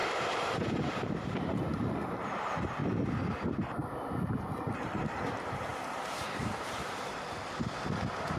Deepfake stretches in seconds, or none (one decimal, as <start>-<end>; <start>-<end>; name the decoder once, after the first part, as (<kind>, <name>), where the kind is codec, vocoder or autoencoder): 0.0-1.9 (vocoder, BigVGAN v2); 5.7-7.2